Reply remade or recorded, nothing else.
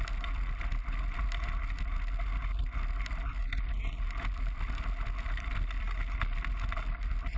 recorded